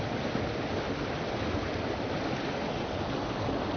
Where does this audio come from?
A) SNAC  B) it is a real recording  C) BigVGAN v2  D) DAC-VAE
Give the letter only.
B